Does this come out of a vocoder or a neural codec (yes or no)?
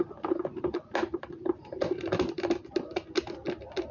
no